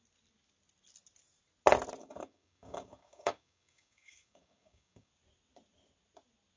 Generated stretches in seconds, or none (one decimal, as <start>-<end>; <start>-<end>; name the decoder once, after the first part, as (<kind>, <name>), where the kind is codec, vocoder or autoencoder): 2.0-5.1 (codec, DAC)